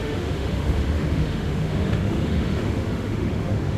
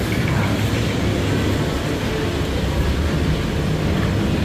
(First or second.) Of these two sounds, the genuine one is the second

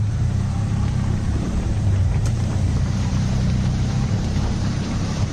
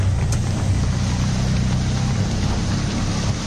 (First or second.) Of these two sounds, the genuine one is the second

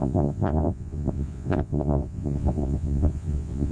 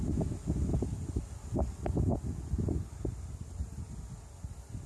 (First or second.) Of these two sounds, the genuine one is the second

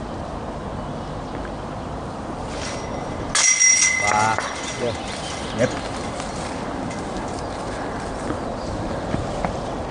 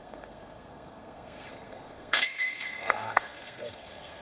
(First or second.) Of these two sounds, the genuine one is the first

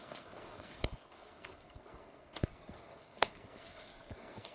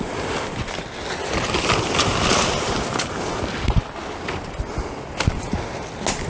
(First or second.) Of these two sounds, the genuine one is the second